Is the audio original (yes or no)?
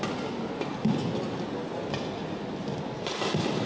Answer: yes